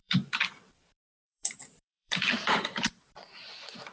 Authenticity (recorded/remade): remade